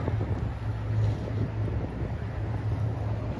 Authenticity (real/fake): real